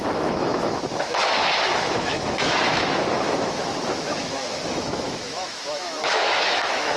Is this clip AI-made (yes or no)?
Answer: yes